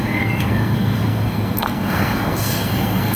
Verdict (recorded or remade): remade